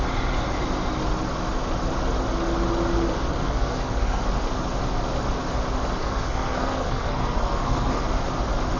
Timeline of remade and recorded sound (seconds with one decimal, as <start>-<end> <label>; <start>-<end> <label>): 0.0-3.3 recorded; 3.3-4.2 remade; 4.2-6.0 recorded; 6.0-8.0 remade; 8.0-8.8 recorded